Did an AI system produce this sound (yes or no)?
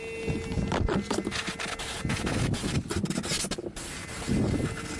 no